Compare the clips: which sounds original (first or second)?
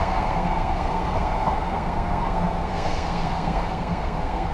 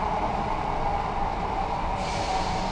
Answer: second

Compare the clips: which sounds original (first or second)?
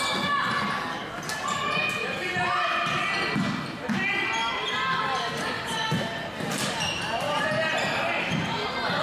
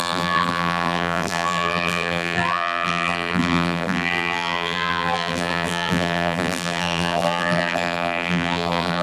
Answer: first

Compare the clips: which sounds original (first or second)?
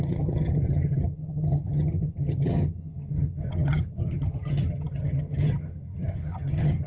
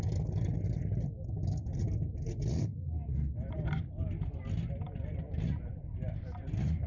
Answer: second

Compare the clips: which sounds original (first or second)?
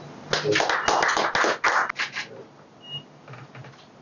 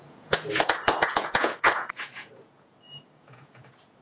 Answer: first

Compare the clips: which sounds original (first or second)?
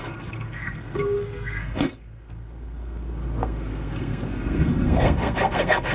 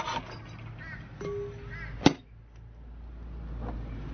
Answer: second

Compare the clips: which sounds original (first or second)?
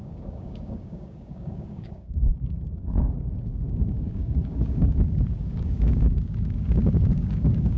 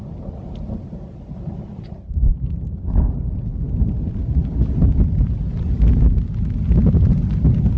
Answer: second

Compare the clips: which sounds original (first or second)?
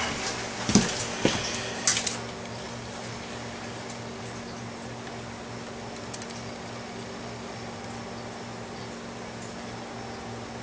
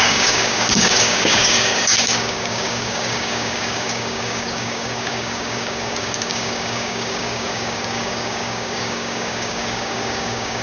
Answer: first